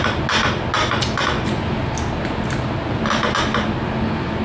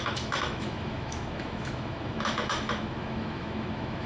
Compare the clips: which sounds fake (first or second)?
second